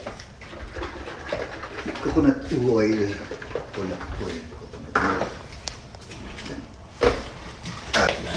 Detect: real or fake real